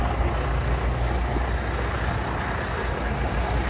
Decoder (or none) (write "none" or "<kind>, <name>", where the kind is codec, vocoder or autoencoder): none